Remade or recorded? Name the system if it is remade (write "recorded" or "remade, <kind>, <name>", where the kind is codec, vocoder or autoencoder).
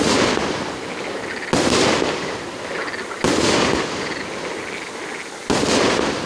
recorded